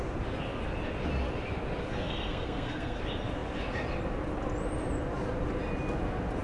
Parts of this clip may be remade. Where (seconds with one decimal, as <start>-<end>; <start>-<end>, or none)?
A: 1.8-3.0